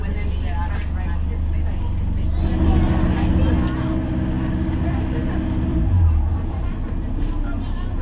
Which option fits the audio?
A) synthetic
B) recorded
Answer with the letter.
B